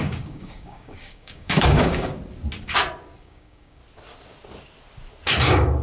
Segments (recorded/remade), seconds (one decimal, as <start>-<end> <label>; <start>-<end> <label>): 0.0-2.1 remade; 2.1-3.2 recorded; 3.2-3.8 remade; 3.8-5.3 recorded; 5.3-5.8 remade